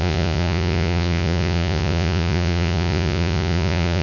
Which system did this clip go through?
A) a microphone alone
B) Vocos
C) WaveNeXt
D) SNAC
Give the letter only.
B